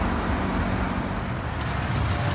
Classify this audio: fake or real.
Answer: real